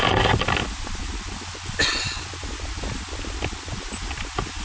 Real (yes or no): yes